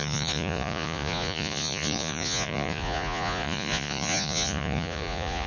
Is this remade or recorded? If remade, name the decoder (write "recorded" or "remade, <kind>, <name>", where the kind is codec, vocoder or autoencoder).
remade, vocoder, Vocos